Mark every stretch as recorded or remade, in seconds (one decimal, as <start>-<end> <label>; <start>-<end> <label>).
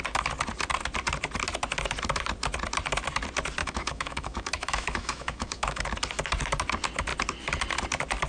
0.0-3.6 recorded; 3.6-5.8 remade; 5.8-8.3 recorded